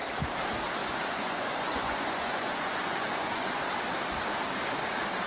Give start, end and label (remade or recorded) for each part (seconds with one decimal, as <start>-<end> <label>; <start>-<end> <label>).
0.0-0.8 recorded; 0.8-3.6 remade; 3.6-5.3 recorded